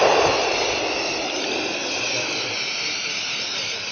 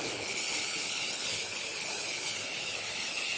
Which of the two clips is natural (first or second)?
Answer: first